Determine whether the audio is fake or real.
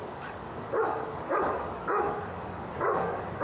fake